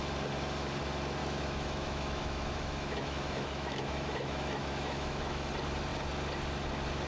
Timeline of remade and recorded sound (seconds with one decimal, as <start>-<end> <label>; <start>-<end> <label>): 0.0-1.2 recorded; 1.2-5.5 remade; 5.5-7.1 recorded